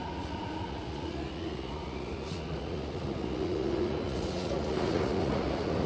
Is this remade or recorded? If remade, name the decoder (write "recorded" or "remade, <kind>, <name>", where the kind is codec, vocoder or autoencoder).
remade, vocoder, Vocos